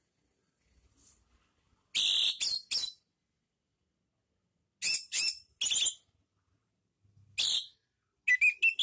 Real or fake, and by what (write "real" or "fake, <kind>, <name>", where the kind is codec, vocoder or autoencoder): real